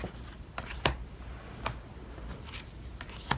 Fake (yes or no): no